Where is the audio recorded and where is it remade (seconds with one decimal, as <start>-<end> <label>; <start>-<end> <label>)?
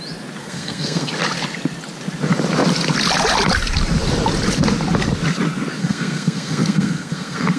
0.0-0.4 recorded; 0.4-1.1 remade; 1.1-5.8 recorded; 5.8-7.6 remade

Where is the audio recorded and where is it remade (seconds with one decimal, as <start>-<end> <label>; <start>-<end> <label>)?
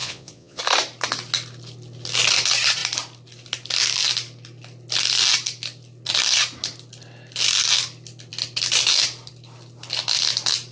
0.0-0.6 remade; 0.6-10.7 recorded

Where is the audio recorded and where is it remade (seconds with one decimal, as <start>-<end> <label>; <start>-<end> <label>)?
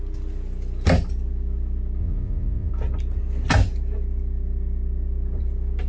0.0-2.0 recorded; 2.0-2.7 remade; 2.7-5.9 recorded